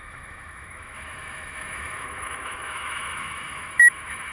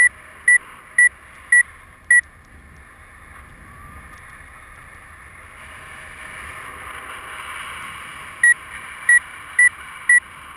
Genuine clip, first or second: second